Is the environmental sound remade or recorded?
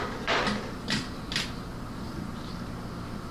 recorded